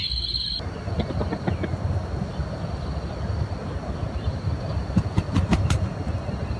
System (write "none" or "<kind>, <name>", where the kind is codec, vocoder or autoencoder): none